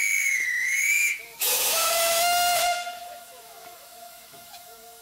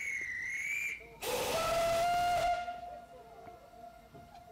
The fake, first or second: first